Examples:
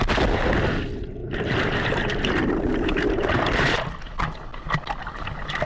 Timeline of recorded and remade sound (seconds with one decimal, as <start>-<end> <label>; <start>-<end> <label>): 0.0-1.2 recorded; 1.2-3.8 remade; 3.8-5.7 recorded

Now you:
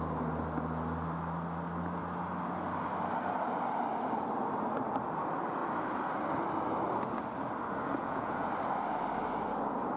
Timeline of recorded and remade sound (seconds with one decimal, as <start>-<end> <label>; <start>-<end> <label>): 0.0-8.0 recorded; 8.0-8.5 remade; 8.5-10.0 recorded

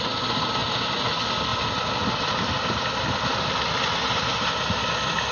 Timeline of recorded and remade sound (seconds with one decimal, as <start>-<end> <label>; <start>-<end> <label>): 0.0-5.3 recorded